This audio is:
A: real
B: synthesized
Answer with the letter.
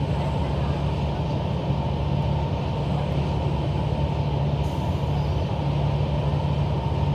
A